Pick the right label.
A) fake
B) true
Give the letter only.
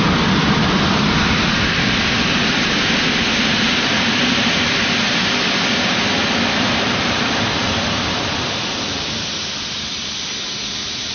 A